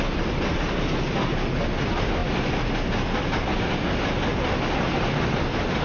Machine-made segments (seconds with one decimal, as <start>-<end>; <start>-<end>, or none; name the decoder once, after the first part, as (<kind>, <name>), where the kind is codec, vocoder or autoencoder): none